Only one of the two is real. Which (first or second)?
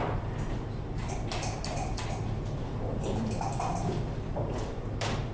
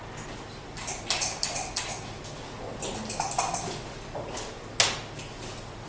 second